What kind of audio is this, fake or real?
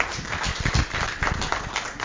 real